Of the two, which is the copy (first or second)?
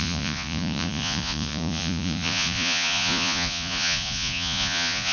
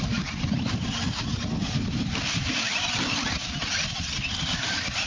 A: first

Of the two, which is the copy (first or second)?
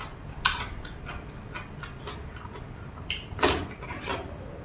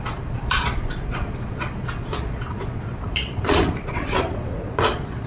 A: second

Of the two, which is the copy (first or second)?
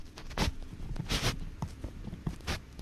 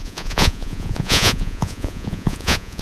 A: second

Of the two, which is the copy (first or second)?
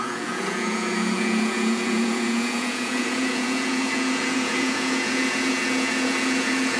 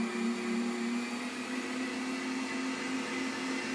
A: first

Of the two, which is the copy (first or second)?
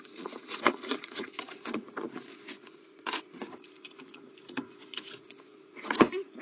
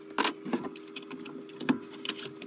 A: first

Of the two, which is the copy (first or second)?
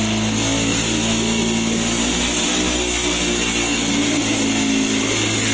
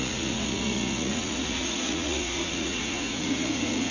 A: second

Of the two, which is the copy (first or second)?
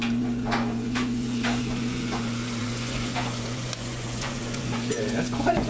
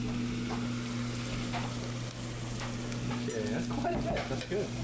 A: first